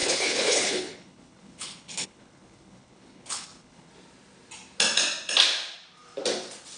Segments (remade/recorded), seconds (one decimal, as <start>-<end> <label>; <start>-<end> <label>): 0.0-3.9 remade; 3.9-6.8 recorded

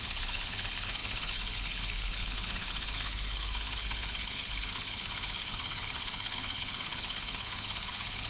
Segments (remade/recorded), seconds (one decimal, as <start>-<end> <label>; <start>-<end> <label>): 0.0-8.3 remade

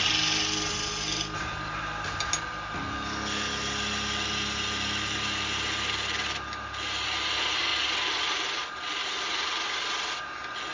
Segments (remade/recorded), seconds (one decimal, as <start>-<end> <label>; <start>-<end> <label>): 0.0-10.7 recorded

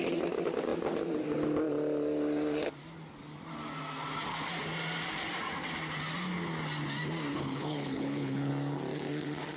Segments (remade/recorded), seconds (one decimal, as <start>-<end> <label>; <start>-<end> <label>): 0.0-7.3 recorded; 7.3-8.5 remade; 8.5-9.6 recorded

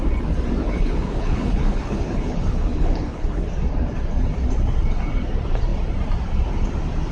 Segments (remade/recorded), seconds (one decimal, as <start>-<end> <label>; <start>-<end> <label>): 0.0-0.6 recorded; 0.6-3.5 remade; 3.5-7.1 recorded